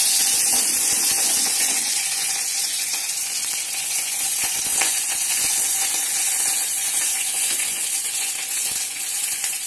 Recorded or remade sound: remade